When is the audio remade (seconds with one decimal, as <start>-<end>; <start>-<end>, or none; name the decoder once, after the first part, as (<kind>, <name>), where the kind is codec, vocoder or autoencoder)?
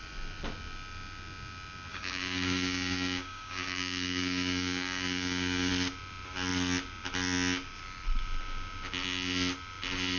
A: 1.9-5.7 (codec, DAC)